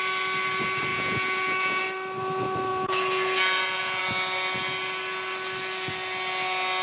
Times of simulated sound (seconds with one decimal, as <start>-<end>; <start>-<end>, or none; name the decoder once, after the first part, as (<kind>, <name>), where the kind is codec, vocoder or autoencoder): 0.9-1.8 (vocoder, Vocos); 2.7-4.0